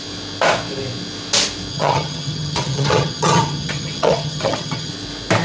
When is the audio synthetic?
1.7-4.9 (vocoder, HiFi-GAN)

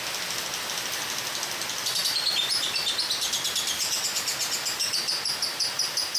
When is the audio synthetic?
none

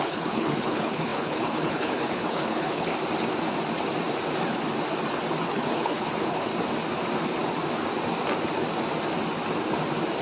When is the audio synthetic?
0.0-2.9 (codec, HILCodec); 5.4-6.5

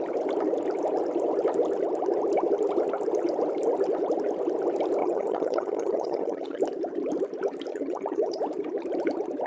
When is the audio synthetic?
5.0-6.6 (vocoder, HiFi-GAN); 7.7-8.4

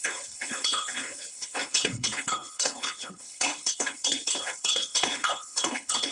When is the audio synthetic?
0.0-6.1 (codec, HILCodec)

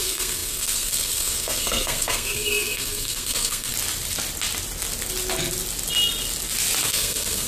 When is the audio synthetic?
0.0-3.7 (codec, SNAC); 6.9-7.5